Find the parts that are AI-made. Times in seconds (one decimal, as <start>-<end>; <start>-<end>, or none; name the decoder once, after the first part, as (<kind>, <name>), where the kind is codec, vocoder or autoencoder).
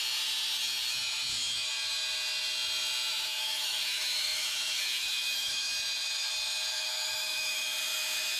3.1-5.7 (autoencoder, DAC-VAE); 6.7-8.4